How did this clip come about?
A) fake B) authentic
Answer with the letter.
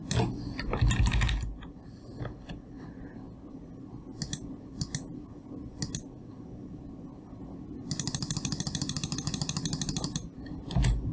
B